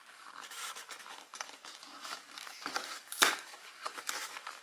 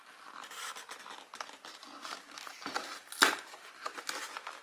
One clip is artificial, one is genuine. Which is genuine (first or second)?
second